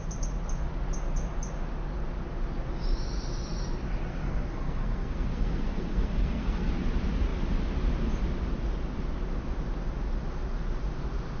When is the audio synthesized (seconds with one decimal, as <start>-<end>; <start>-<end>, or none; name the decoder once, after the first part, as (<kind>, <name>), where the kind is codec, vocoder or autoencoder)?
4.1-6.7 (codec, SNAC)